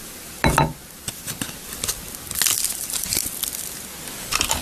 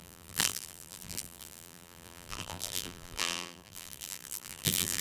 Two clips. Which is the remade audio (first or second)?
second